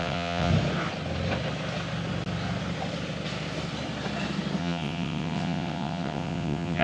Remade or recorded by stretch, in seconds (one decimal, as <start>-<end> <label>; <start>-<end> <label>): 0.0-0.5 remade; 0.5-4.6 recorded; 4.6-6.8 remade